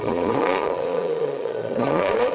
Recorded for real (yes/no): no